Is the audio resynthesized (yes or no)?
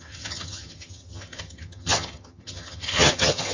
yes